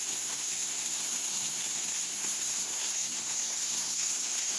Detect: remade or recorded remade